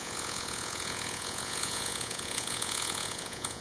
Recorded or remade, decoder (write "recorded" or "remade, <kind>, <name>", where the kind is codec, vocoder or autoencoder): remade, vocoder, Vocos